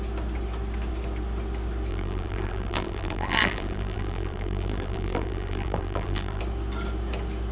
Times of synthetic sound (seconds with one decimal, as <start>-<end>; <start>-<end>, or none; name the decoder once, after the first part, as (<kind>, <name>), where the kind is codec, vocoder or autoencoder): 1.9-6.4 (vocoder, BigVGAN v2)